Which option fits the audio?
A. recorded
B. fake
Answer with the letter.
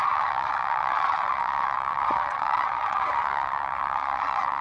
B